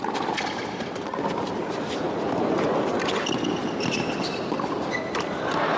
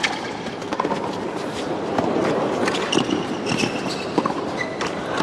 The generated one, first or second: second